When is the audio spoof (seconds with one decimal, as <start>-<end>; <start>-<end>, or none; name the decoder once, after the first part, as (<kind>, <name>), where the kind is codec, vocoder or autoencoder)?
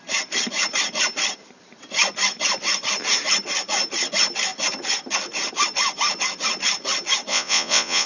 7.3-8.1 (vocoder, Vocos)